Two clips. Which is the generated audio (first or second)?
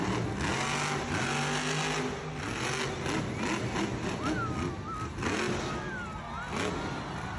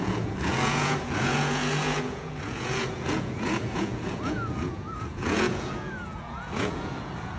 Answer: second